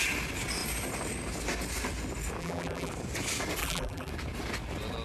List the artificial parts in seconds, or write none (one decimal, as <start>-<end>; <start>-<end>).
2.4-2.9; 3.6-4.1